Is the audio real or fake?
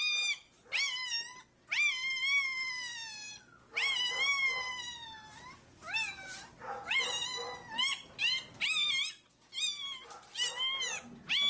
real